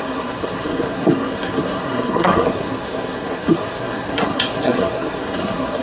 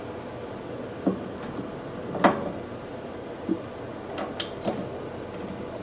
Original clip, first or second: second